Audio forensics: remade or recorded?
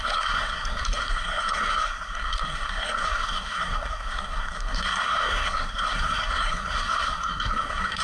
remade